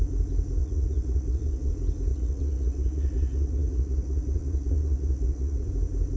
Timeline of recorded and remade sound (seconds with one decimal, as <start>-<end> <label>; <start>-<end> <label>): 0.0-0.6 recorded; 0.6-1.7 remade; 1.7-2.1 recorded; 2.1-5.7 remade; 5.7-6.2 recorded